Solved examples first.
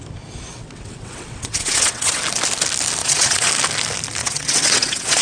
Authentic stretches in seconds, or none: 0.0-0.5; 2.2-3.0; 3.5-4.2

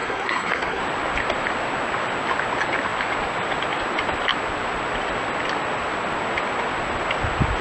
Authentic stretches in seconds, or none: 0.8-7.6

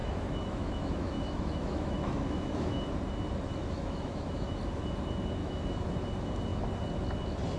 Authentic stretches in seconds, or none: 2.8-3.6; 4.6-5.4; 5.9-7.6

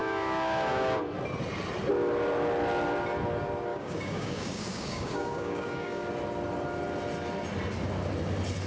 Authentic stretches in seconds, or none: 1.0-3.7; 6.1-8.7